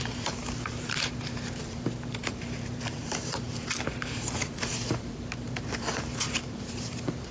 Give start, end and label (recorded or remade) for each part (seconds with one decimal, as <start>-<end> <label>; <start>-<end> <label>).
0.0-7.3 remade

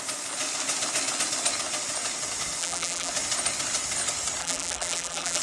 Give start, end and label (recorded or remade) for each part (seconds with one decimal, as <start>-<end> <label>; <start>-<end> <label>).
0.0-2.6 recorded; 2.6-3.1 remade; 3.1-4.4 recorded; 4.4-5.4 remade

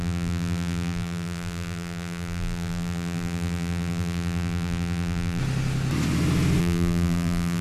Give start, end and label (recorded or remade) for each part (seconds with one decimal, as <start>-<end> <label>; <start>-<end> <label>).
0.0-5.4 remade; 5.4-6.6 recorded; 6.6-7.6 remade